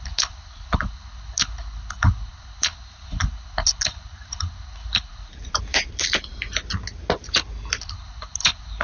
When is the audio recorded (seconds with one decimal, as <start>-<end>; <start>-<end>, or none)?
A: 5.3-7.8